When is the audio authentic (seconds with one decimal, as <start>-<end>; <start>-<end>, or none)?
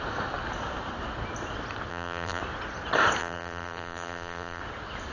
0.0-1.9; 2.4-3.2; 4.6-5.1